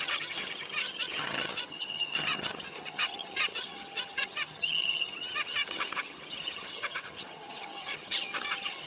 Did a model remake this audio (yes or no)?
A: yes